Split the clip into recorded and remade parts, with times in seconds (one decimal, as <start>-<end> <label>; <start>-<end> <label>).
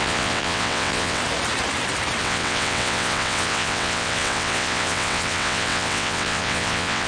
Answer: 0.0-1.2 remade; 1.2-2.2 recorded; 2.2-7.1 remade